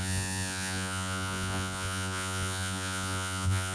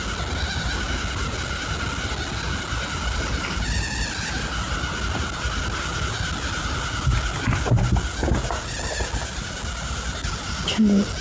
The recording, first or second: second